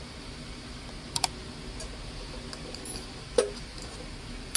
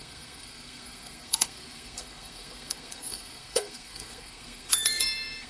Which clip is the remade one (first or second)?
second